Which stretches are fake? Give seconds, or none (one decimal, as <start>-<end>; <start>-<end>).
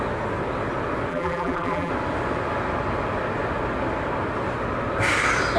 1.1-1.9